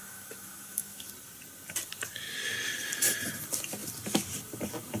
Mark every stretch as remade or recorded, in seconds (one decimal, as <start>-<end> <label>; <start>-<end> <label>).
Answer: 0.0-1.1 remade; 1.1-5.0 recorded